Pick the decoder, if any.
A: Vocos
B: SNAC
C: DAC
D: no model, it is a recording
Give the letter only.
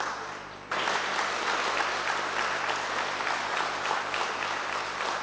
D